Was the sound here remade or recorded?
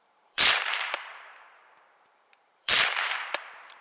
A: remade